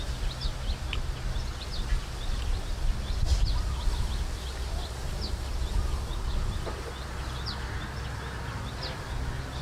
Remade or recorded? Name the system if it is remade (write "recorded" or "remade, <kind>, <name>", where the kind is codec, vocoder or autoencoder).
recorded